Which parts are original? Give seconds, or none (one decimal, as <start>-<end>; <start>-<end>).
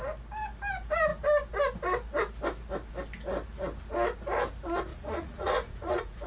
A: 0.0-4.9